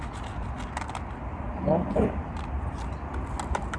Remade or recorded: recorded